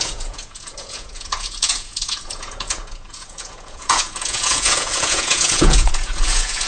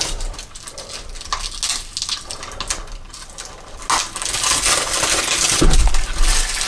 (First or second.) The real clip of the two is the second